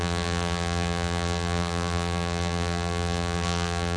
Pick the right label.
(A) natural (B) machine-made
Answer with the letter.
B